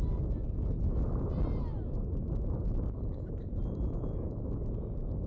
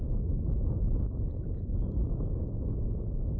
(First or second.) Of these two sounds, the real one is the first